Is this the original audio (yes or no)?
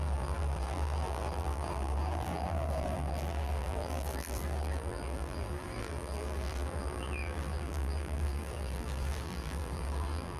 no